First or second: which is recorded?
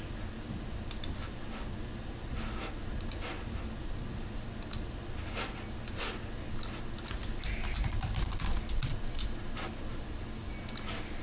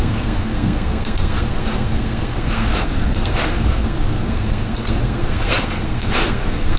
first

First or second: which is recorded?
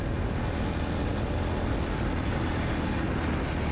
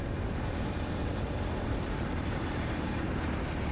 first